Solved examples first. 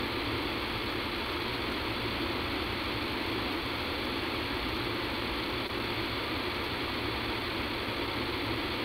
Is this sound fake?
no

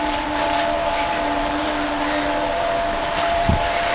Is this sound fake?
yes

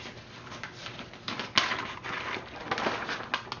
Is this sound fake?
no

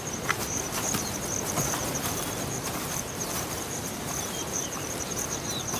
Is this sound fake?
yes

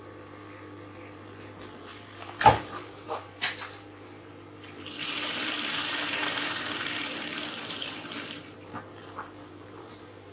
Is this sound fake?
yes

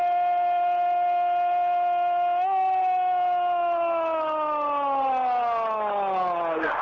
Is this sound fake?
no